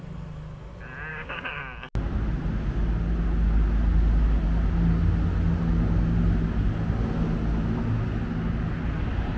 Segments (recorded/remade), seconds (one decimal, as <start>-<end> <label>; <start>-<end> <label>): 0.0-1.1 recorded; 1.1-1.6 remade; 1.6-9.4 recorded